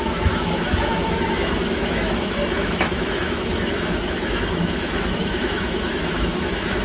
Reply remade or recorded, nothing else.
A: remade